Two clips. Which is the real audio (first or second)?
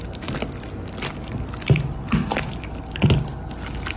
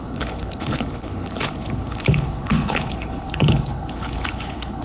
first